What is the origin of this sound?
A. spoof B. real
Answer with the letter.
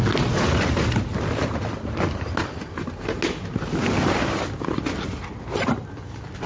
B